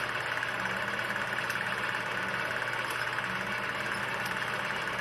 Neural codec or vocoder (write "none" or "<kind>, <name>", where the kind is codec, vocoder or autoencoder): none